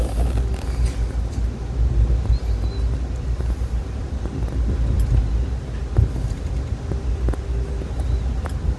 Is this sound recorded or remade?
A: recorded